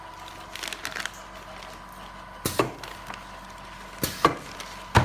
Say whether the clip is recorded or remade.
recorded